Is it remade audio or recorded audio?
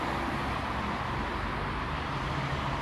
recorded